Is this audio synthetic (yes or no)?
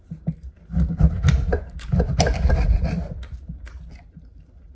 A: no